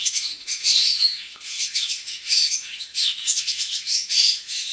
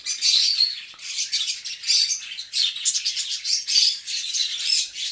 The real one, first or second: second